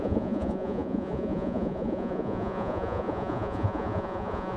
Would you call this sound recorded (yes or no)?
no